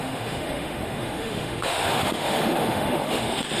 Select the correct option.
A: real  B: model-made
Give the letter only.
B